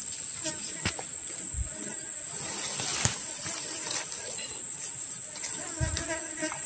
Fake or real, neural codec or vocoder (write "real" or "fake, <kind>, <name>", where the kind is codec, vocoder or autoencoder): real